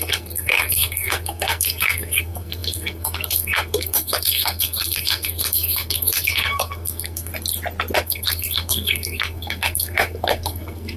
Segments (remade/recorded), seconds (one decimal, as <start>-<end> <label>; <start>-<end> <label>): 0.0-7.3 remade; 7.3-8.0 recorded; 8.0-11.0 remade